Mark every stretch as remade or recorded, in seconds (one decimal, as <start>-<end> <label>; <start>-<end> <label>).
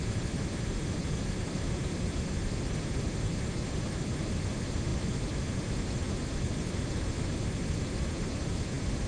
0.0-9.1 recorded